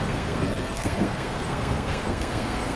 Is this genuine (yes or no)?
no